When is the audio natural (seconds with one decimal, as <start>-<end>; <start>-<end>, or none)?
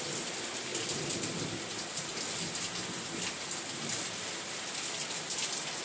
0.0-5.8